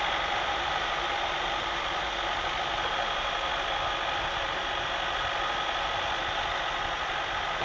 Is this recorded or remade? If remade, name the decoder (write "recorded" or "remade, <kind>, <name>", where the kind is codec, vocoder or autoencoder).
recorded